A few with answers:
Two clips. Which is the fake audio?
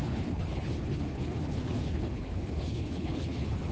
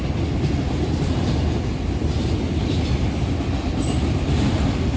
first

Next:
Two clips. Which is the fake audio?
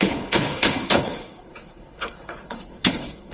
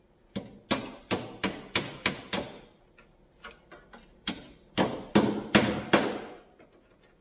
first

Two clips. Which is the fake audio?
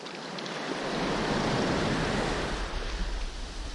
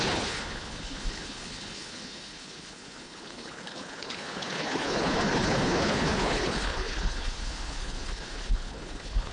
second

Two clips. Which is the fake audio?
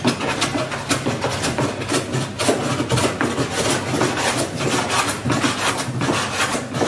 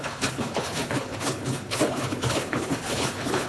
second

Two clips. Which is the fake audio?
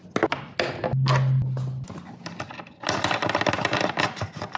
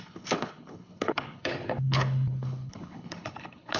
second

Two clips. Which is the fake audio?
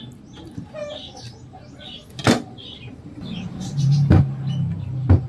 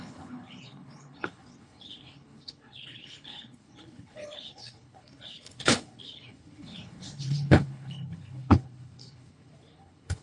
second